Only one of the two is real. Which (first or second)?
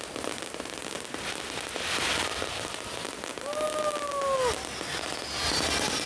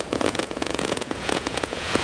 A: first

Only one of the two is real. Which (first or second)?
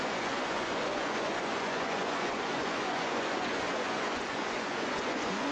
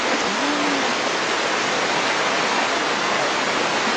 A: second